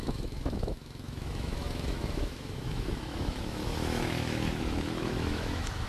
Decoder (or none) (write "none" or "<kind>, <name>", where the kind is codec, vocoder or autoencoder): autoencoder, DAC-VAE